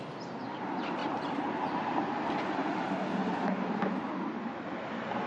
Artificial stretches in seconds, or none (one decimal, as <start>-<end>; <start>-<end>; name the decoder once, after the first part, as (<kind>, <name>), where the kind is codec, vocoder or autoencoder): none